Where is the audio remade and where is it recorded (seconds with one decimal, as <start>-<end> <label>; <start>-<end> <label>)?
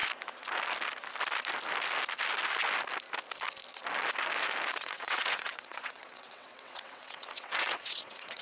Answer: 0.0-4.8 recorded; 4.8-8.4 remade